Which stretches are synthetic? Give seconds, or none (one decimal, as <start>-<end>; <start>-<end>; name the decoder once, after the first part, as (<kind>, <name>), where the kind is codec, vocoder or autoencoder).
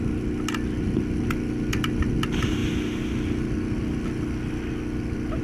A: none